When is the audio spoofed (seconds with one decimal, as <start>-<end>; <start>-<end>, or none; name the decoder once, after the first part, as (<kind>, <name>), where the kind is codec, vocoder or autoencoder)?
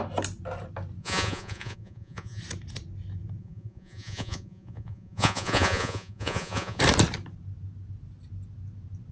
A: 1.0-2.4 (vocoder, Vocos); 3.4-6.8